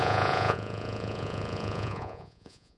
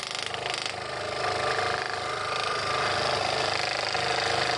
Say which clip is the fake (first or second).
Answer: first